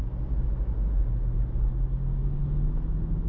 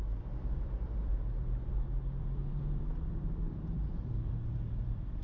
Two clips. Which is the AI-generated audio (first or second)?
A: second